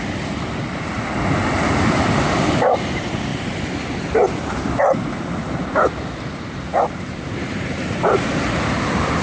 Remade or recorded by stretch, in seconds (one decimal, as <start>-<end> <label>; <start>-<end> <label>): 0.0-3.3 recorded; 3.3-3.9 remade; 3.9-6.7 recorded; 6.7-8.4 remade; 8.4-9.2 recorded